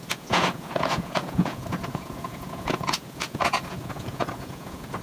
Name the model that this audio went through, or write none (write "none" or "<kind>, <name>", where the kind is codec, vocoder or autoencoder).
vocoder, Vocos